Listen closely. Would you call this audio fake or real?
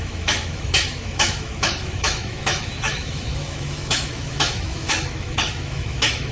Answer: fake